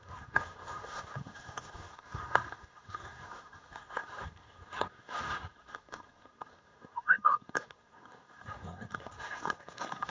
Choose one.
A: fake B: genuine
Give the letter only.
A